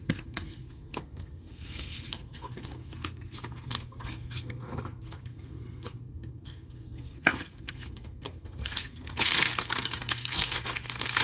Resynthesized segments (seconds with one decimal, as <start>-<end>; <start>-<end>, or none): 0.0-11.2